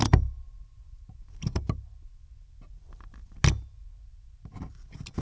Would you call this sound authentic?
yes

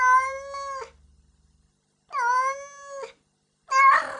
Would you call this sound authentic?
yes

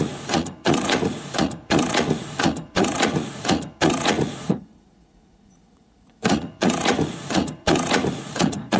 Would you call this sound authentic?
no